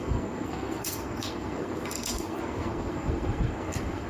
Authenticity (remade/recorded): remade